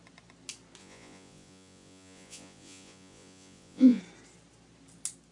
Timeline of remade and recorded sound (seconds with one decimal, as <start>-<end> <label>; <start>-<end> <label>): 0.0-0.8 recorded; 0.8-4.0 remade; 4.0-5.3 recorded